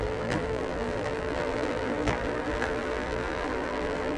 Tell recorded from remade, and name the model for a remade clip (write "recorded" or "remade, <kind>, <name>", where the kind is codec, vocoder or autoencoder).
remade, vocoder, BigVGAN v2